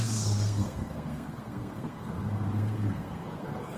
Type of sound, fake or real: fake